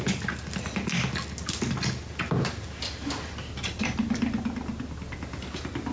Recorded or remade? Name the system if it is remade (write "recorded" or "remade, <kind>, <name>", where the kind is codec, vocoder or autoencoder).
recorded